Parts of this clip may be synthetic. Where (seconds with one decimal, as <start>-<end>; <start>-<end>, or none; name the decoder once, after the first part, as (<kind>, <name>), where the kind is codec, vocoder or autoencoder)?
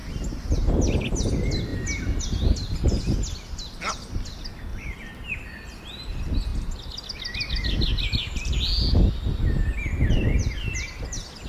0.0-0.7 (vocoder, BigVGAN v2); 4.7-5.3